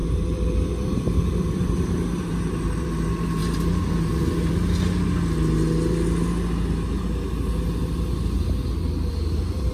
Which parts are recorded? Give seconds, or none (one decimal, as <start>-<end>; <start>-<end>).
2.6-3.4; 4.5-9.7

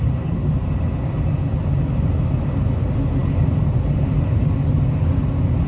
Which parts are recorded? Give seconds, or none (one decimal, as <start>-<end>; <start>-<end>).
0.0-5.7

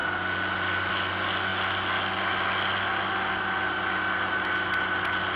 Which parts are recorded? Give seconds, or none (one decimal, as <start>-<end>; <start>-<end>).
0.0-5.4

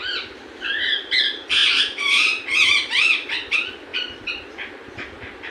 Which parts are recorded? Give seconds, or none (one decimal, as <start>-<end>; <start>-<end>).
none

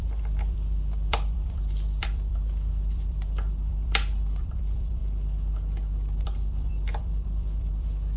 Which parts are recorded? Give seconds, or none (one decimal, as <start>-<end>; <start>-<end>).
5.0-6.2

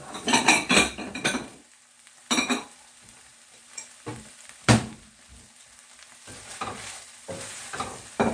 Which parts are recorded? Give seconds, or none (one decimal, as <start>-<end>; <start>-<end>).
none

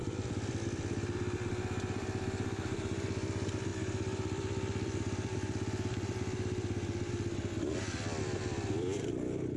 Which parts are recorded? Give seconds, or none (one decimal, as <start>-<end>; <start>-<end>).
none